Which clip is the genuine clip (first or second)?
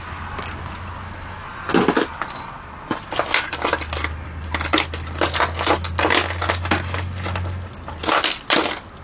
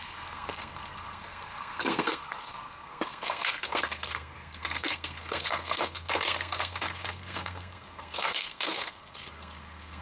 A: first